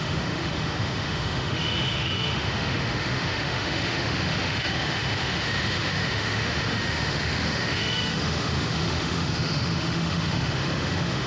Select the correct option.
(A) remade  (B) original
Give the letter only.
A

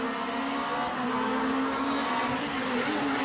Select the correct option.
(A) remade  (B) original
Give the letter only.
B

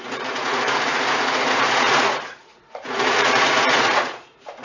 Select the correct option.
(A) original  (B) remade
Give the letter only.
B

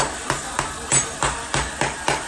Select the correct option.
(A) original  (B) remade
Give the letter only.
B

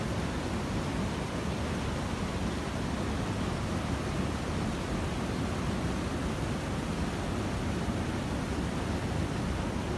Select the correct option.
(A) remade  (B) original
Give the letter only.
B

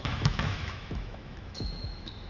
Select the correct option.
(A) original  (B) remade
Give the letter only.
B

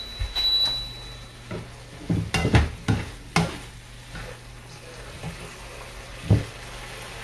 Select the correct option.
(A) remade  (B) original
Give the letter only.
B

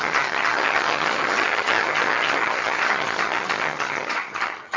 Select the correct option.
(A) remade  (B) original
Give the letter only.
A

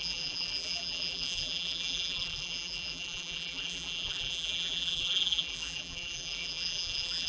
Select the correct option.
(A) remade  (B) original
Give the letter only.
A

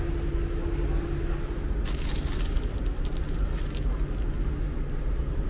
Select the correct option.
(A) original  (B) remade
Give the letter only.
A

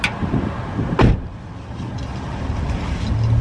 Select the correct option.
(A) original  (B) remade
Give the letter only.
A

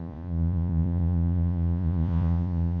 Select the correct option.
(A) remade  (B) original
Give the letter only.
A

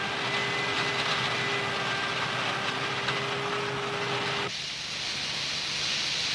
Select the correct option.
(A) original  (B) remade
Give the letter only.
A